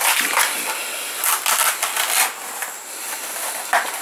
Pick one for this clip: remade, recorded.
recorded